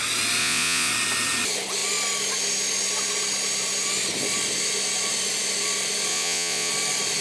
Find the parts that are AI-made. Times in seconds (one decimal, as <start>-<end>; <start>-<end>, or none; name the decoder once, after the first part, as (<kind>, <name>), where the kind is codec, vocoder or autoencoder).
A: 0.4-0.9 (vocoder, Vocos); 6.1-6.7